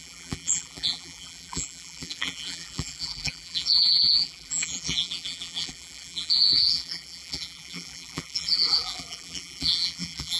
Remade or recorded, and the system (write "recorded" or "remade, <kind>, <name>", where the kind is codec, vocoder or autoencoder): remade, vocoder, BigVGAN v2